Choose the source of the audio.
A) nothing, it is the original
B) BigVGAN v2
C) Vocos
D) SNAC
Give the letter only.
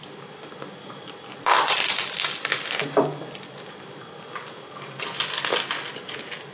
A